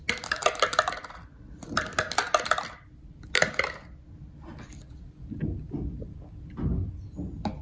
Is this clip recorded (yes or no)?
yes